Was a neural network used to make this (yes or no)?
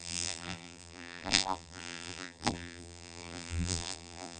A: yes